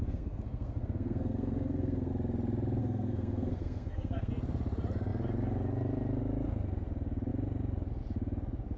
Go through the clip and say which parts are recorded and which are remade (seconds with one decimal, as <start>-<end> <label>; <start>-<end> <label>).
0.0-2.1 remade; 2.1-2.8 recorded; 2.8-4.3 remade; 4.3-8.8 recorded